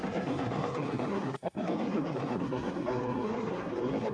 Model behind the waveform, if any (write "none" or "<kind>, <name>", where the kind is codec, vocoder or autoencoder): codec, SNAC